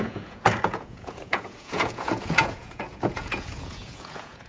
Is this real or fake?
fake